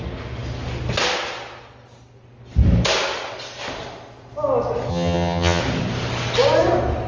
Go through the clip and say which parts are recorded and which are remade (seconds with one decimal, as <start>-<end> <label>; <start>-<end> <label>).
0.0-4.9 recorded; 4.9-5.6 remade; 5.6-7.1 recorded